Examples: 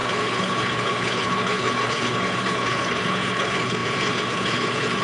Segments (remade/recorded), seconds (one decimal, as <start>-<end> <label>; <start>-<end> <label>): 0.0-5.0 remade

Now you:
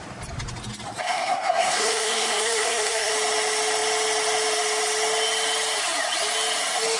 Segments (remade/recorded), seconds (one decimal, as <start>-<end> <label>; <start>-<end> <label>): 0.0-1.0 recorded; 1.0-3.1 remade; 3.1-7.0 recorded

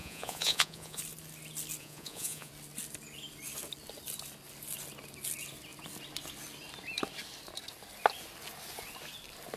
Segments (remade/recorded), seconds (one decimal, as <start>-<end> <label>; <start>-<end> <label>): 0.0-1.0 remade; 1.0-1.8 recorded; 1.8-2.5 remade; 2.5-9.6 recorded

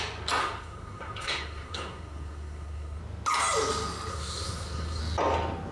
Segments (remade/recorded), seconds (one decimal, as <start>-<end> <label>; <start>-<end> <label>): 0.0-0.4 recorded; 0.4-3.0 remade; 3.0-4.1 recorded; 4.1-5.0 remade; 5.0-5.7 recorded

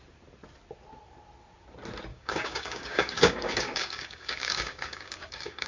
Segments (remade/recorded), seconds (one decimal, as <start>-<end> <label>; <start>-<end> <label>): 0.0-2.1 recorded; 2.1-5.7 remade

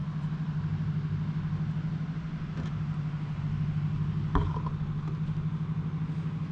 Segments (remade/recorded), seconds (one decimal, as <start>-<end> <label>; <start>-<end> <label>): 0.0-6.5 recorded

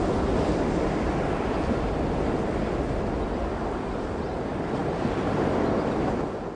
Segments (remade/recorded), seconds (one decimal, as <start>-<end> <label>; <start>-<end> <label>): 0.0-6.6 recorded